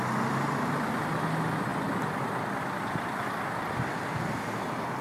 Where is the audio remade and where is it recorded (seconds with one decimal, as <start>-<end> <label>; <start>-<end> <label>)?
0.0-5.0 recorded